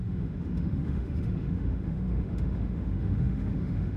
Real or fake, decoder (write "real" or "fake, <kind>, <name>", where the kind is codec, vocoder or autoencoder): fake, autoencoder, DAC-VAE